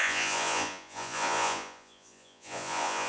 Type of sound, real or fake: fake